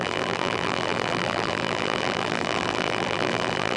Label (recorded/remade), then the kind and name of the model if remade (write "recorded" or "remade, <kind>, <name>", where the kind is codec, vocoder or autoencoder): remade, vocoder, BigVGAN v2